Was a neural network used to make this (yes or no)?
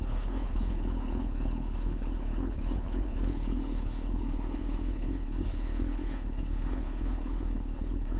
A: yes